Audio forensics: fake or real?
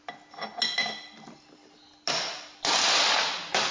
real